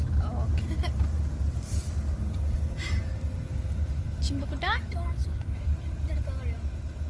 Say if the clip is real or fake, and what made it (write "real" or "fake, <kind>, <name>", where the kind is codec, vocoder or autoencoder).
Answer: real